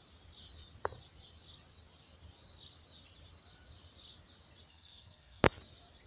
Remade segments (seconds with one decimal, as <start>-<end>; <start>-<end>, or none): 4.7-5.4